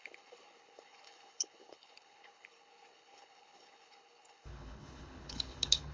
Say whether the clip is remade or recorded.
remade